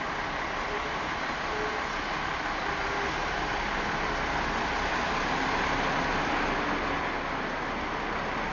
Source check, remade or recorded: recorded